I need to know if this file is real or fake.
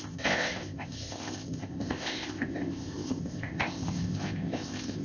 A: fake